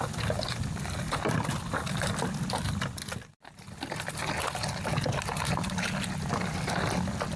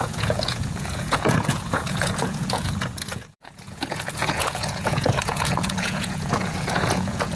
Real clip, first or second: first